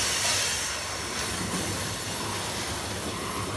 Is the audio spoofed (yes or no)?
no